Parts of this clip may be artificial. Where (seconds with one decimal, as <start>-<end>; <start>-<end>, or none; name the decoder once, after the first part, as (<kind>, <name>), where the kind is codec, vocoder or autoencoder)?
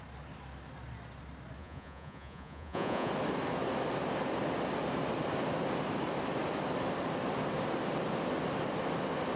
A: 1.6-3.1 (vocoder, Vocos)